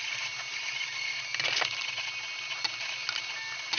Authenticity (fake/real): real